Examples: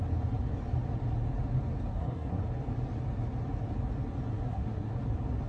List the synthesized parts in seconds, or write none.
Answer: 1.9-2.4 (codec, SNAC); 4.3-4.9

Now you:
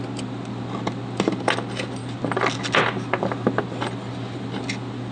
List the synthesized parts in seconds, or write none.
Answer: none

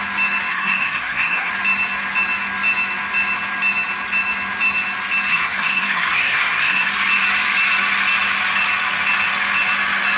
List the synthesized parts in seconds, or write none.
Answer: 0.5-1.5 (codec, SNAC); 5.3-6.9

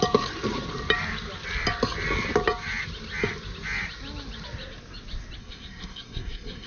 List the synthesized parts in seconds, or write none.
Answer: 5.4-6.7 (codec, SNAC)

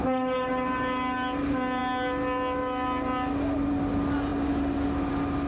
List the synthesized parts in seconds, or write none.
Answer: none

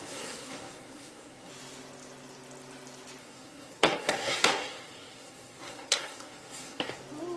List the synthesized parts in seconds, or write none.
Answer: 0.0-1.5 (codec, SNAC); 3.2-7.0